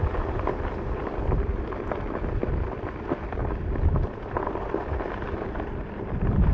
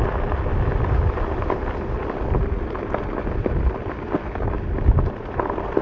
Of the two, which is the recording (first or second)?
second